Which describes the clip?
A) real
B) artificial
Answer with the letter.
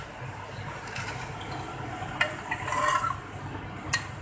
A